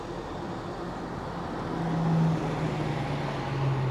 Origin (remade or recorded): recorded